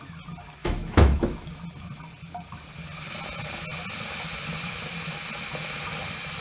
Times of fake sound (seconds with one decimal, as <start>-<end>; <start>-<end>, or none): 0.6-1.6

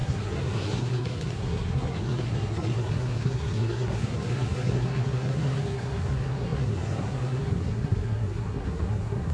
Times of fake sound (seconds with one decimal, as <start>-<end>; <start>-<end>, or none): 0.0-9.3

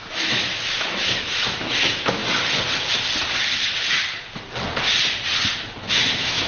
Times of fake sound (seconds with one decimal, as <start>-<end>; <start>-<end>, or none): 0.0-2.2; 5.9-6.5

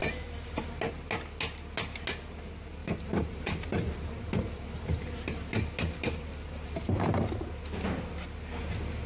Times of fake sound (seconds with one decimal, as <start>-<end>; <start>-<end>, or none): 2.8-7.0

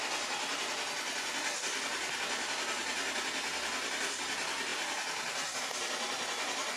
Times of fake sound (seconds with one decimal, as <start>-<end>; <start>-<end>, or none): none

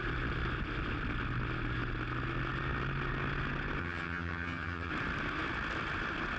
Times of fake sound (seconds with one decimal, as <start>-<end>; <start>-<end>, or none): 3.8-4.9